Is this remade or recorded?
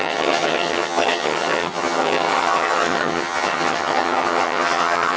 remade